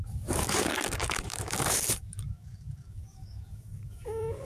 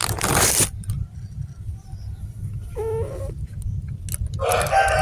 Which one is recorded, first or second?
second